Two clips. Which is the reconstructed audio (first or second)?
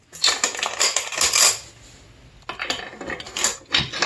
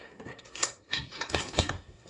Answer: second